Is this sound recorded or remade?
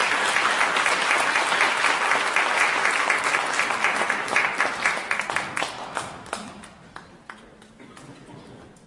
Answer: recorded